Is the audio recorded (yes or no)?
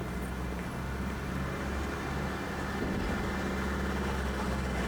yes